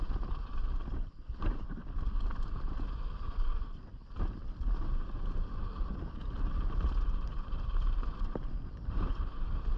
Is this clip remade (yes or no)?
yes